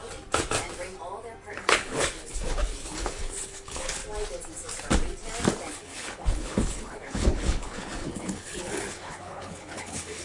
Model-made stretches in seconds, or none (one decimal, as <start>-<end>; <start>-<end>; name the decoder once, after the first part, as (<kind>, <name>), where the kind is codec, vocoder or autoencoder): 1.5-4.0 (codec, HILCodec); 5.7-10.2